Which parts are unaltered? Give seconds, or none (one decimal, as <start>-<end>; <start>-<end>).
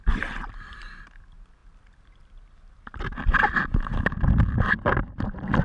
0.0-5.6